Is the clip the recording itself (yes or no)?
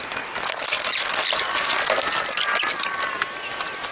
yes